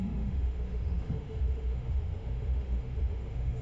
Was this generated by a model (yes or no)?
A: yes